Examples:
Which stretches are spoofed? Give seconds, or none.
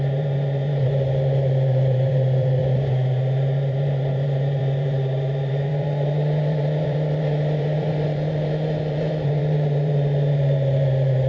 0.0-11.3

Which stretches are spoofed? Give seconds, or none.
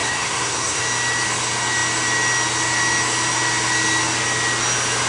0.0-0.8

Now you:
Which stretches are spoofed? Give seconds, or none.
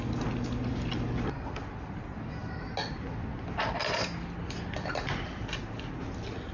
none